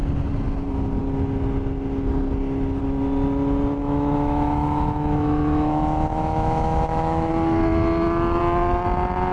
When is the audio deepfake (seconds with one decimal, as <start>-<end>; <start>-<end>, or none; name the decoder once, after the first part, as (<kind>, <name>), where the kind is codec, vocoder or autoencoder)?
3.8-7.3 (autoencoder, DAC-VAE)